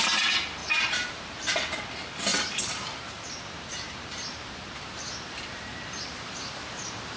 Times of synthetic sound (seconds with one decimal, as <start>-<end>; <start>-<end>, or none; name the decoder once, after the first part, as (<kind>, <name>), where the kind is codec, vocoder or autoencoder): 0.6-1.5 (vocoder, BigVGAN v2); 2.3-6.6